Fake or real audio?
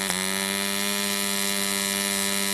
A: real